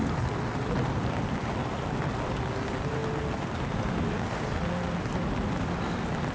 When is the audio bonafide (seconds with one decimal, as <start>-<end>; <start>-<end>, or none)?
3.0-5.0